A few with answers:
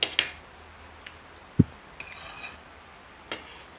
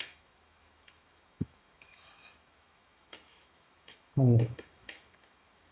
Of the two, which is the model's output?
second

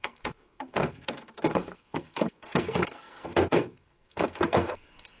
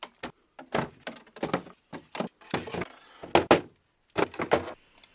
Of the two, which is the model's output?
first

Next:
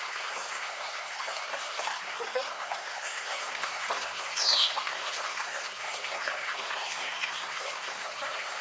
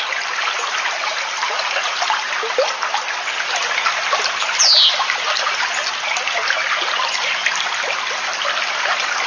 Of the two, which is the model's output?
first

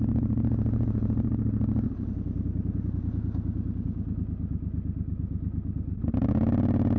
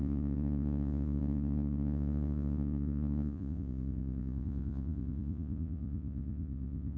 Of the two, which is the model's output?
second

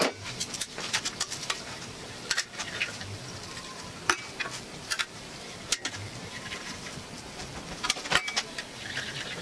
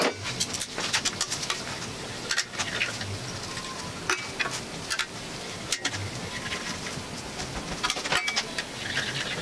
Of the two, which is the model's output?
first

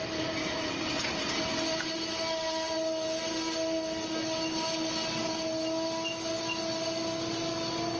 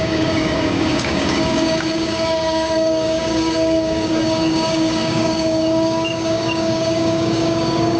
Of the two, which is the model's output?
second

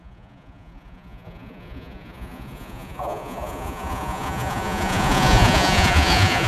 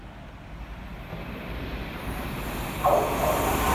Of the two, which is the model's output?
first